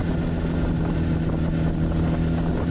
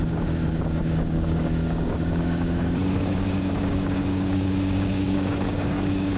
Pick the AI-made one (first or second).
second